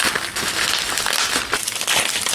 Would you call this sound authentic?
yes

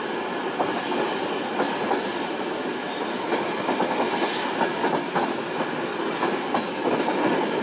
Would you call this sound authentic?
yes